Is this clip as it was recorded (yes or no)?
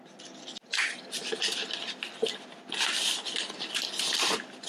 yes